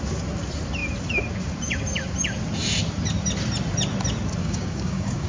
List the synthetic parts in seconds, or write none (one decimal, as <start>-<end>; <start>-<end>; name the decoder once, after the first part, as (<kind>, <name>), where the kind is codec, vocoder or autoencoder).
4.4-5.3 (codec, DAC)